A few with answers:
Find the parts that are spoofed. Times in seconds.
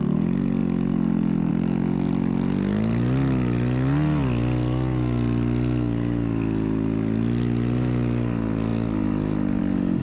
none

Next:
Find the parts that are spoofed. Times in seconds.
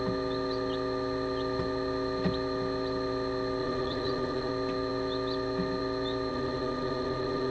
3.6-4.5 (vocoder, WaveNeXt); 6.3-7.5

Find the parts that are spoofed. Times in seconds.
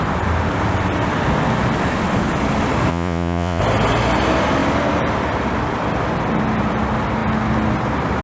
2.9-3.6 (vocoder, Vocos)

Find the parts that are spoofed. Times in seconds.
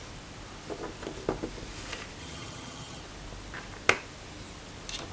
2.2-3.0 (vocoder, HiFi-GAN)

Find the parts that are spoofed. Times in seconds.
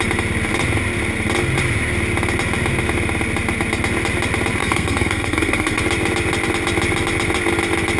4.6-5.8 (codec, SNAC)